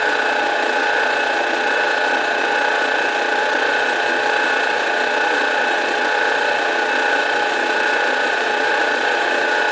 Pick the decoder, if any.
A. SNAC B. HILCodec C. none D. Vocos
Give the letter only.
D